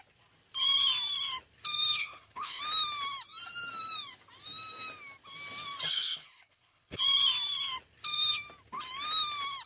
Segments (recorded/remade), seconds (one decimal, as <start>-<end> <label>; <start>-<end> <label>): 0.0-2.0 recorded; 2.0-2.6 remade; 2.6-5.9 recorded; 5.9-7.0 remade; 7.0-9.7 recorded

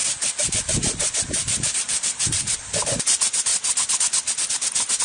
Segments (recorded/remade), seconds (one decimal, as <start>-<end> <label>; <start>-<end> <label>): 0.0-5.0 recorded

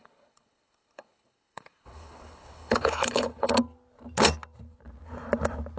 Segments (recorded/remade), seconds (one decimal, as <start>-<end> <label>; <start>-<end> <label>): 0.0-3.5 remade; 3.5-5.8 recorded